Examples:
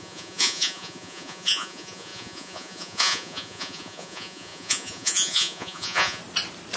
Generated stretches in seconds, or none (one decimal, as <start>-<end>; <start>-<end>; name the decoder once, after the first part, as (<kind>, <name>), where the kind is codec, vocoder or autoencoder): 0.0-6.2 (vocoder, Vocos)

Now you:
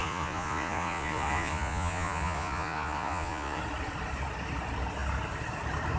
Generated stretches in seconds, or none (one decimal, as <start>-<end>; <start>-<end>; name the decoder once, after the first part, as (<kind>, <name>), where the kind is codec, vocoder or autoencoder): 0.0-3.6 (vocoder, Vocos)

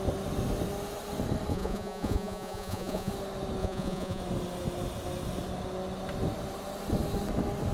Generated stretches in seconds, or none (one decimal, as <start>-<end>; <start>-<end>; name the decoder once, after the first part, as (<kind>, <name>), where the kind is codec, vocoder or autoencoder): 1.5-3.1 (vocoder, Vocos); 3.6-4.2

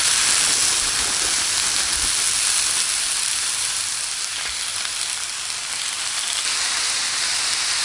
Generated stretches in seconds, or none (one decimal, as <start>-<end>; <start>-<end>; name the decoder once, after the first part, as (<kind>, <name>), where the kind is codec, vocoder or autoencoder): none

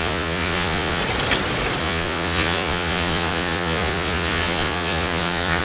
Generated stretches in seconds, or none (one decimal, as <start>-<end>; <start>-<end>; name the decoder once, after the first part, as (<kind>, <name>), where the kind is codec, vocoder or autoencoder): 0.0-1.0 (vocoder, Vocos); 1.8-5.6